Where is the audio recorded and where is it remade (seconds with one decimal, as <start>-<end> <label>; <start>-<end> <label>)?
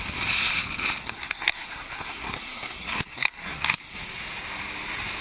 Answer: 0.0-1.0 recorded; 1.0-4.0 remade; 4.0-5.2 recorded